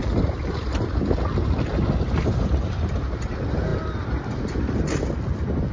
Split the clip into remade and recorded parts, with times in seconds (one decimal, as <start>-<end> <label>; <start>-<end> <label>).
0.0-5.7 recorded